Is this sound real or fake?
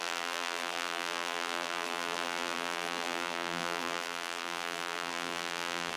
fake